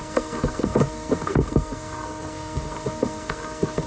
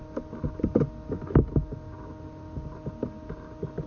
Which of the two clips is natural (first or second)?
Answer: second